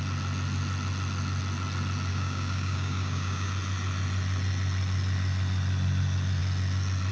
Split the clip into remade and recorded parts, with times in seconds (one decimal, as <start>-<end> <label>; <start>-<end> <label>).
0.0-2.1 recorded; 2.1-3.5 remade; 3.5-7.1 recorded